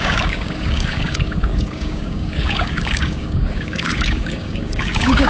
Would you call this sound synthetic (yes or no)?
yes